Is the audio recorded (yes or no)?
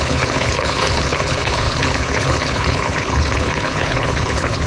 no